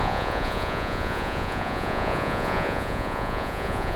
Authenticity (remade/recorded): remade